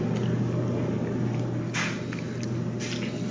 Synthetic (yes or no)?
no